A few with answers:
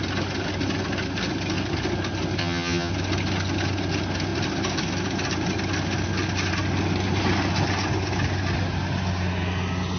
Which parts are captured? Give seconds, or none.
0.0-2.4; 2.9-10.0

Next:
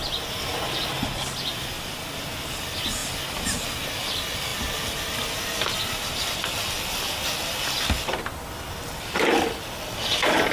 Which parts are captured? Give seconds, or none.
0.0-10.5

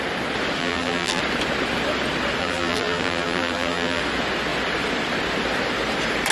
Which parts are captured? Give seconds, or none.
0.0-0.6; 1.2-2.4; 4.0-6.3